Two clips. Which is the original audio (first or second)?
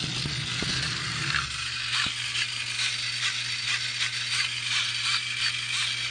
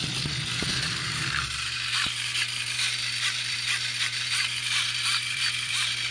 first